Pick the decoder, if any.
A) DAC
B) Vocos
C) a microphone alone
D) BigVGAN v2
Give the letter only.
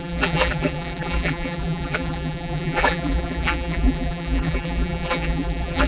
D